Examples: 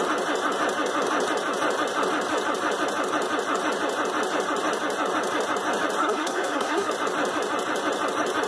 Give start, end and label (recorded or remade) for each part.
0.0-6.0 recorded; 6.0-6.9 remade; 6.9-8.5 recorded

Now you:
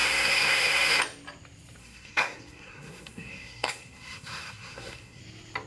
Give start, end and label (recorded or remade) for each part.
0.0-1.0 remade; 1.0-1.8 recorded; 1.8-5.2 remade; 5.2-5.7 recorded

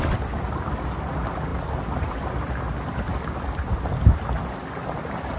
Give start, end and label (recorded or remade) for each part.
0.0-5.4 recorded

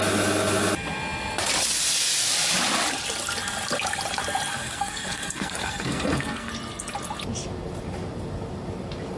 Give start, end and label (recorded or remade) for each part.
0.0-4.5 recorded; 4.5-6.5 remade; 6.5-9.2 recorded